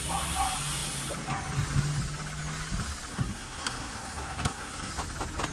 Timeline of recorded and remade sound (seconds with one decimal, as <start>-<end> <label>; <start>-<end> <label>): 0.0-3.1 recorded; 3.1-4.9 remade; 4.9-5.5 recorded

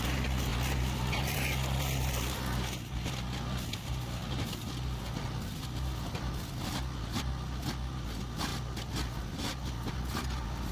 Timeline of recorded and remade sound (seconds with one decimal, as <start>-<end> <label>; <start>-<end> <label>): 0.0-10.7 recorded

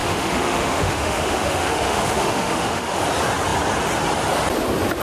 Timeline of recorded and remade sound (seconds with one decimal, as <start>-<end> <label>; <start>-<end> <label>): 0.0-3.0 remade; 3.0-5.0 recorded

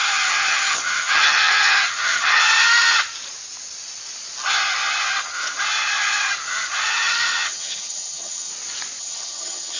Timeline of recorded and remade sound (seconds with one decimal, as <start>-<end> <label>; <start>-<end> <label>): 0.0-2.4 remade; 2.4-6.9 recorded; 6.9-8.5 remade; 8.5-9.0 recorded; 9.0-9.8 remade

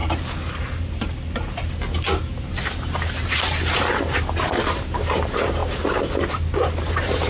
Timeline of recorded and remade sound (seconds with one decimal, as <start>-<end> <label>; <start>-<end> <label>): 0.0-4.4 recorded; 4.4-5.6 remade; 5.6-6.8 recorded; 6.8-7.3 remade

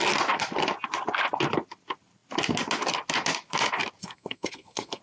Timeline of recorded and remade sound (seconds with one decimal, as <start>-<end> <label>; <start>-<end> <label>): 0.0-4.0 recorded; 4.0-5.0 remade

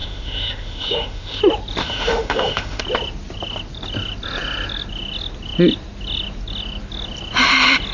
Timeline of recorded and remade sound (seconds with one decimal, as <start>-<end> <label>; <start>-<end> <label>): 0.0-1.4 remade; 1.4-1.8 recorded; 1.8-2.8 remade; 2.8-7.9 recorded